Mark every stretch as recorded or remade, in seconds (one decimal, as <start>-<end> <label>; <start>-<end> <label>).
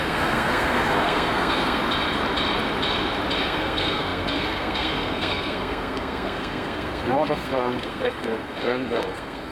0.0-1.8 remade; 1.8-3.4 recorded; 3.4-9.5 remade